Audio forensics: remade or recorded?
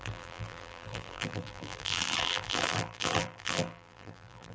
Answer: remade